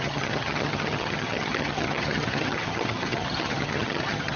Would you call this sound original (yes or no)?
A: no